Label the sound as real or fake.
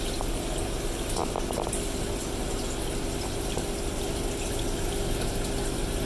real